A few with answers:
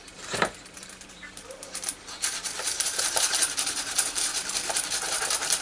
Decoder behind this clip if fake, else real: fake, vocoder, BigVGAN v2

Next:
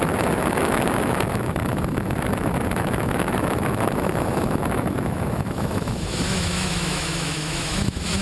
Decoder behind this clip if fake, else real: fake, autoencoder, DAC-VAE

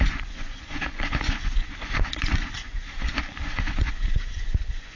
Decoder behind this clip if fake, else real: fake, vocoder, Vocos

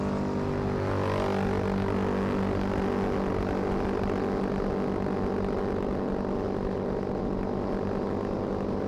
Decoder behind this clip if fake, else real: real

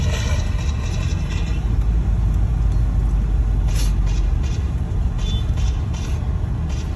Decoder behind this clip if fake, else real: real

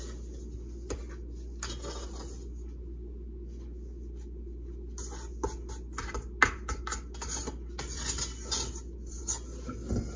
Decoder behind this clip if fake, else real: real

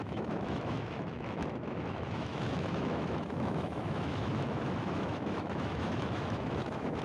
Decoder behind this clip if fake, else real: fake, autoencoder, DAC-VAE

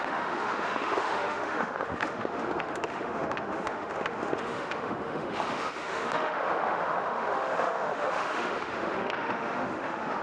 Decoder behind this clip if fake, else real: fake, autoencoder, DAC-VAE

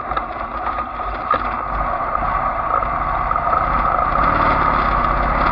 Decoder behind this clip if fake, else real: real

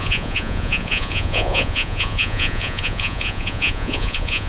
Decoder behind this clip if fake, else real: fake, vocoder, Vocos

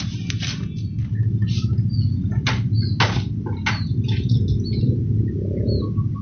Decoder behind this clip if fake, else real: real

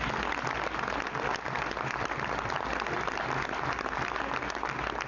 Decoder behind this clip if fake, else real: real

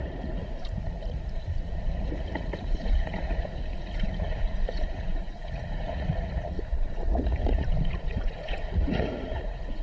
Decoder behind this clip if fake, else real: fake, vocoder, Vocos